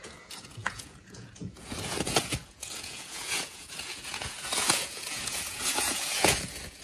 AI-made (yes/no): yes